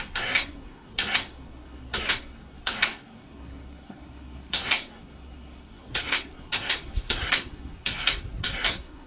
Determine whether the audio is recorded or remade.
remade